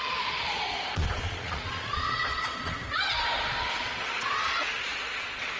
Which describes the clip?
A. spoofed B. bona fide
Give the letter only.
A